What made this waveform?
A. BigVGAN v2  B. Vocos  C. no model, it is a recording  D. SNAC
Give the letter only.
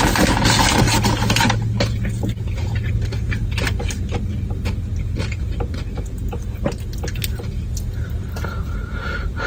C